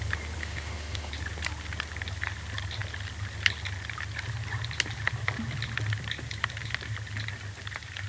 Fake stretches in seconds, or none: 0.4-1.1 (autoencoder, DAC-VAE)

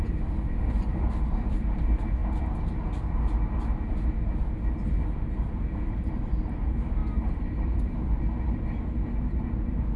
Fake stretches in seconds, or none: none

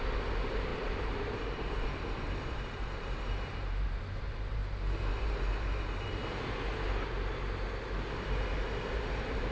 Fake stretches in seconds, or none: 0.0-4.6 (vocoder, BigVGAN v2); 5.1-6.2; 7.8-9.5